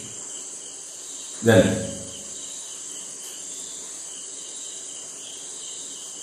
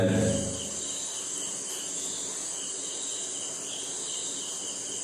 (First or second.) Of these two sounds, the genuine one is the second